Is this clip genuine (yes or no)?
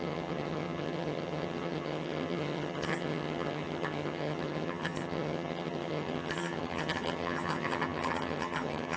no